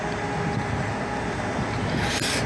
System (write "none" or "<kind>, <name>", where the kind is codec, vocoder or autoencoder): none